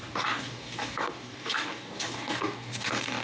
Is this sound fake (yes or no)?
yes